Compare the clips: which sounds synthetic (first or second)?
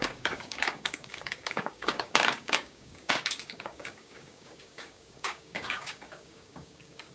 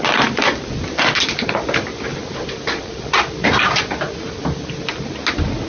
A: first